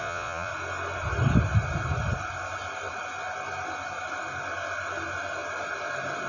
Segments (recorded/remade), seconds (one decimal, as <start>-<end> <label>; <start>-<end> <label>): 0.0-0.5 remade; 0.5-6.3 recorded